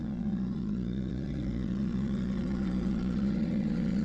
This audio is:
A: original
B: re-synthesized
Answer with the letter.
B